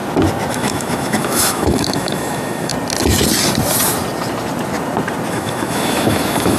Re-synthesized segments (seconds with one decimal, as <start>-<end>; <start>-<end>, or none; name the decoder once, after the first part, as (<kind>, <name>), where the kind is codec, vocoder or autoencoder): 0.5-2.7 (autoencoder, DAC-VAE); 5.3-6.6